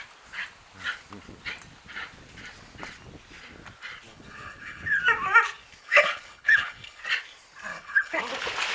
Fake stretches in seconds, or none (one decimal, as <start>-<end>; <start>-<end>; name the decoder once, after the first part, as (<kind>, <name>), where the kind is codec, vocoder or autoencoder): 4.1-5.0 (codec, HILCodec); 5.8-7.0; 7.7-8.2